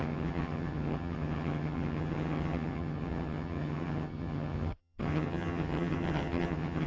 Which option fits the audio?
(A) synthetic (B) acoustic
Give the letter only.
A